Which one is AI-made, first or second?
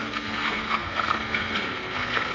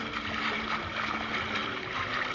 first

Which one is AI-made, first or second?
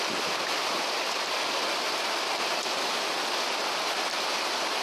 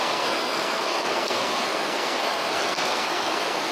second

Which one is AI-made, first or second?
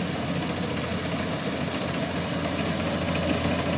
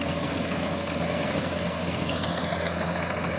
second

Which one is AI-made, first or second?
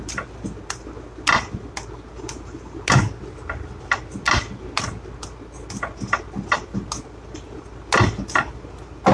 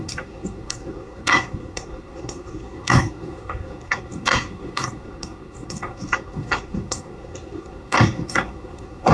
second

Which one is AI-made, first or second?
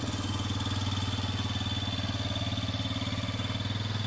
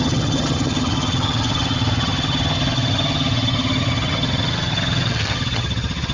second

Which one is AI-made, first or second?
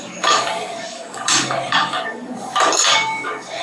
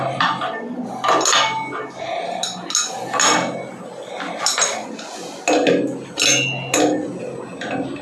first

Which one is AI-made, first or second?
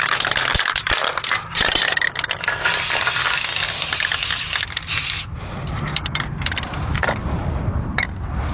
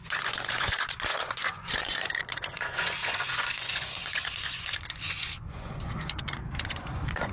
second